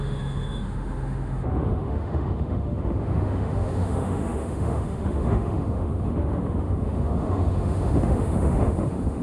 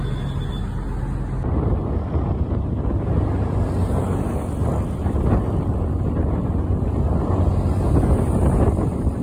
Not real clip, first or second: first